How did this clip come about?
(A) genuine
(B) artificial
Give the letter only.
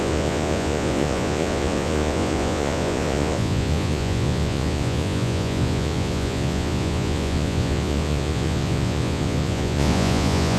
B